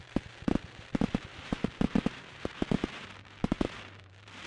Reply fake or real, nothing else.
fake